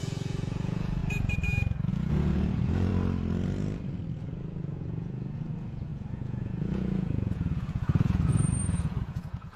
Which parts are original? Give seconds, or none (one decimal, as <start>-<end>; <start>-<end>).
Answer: 1.0-1.9; 2.9-4.1